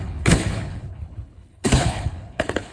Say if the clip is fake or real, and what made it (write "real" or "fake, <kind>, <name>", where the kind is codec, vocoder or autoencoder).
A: fake, codec, HILCodec